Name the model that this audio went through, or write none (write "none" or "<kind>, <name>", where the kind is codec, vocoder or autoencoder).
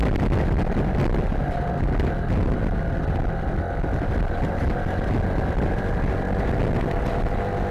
none